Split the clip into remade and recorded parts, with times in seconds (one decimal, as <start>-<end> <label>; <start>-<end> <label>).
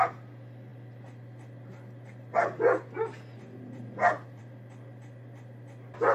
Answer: 0.0-6.1 recorded